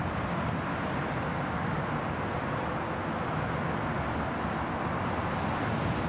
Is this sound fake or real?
real